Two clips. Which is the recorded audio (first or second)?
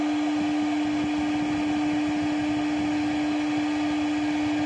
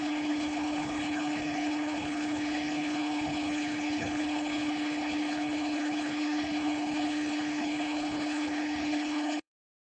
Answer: first